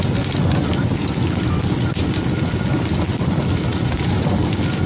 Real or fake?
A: real